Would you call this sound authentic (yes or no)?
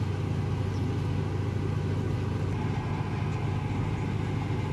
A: yes